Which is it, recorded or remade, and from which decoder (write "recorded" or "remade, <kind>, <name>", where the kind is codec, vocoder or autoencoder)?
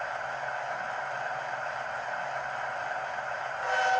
recorded